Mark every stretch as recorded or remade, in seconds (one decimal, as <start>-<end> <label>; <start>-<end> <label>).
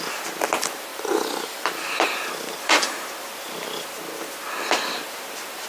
0.0-5.7 recorded